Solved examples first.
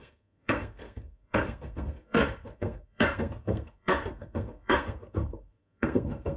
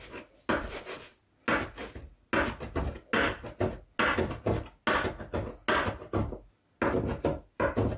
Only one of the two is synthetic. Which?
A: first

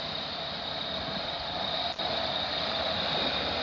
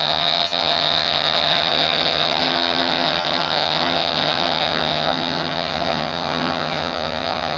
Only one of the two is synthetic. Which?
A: second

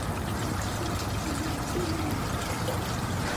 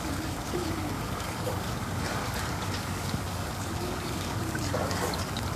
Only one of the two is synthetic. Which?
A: second